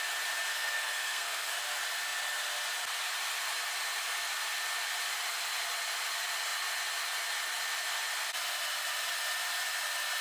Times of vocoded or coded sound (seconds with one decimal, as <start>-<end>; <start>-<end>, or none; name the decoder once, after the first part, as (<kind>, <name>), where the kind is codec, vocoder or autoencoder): 0.5-1.5 (codec, SNAC)